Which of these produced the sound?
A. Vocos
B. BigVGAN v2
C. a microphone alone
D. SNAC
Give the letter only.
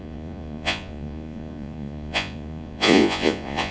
A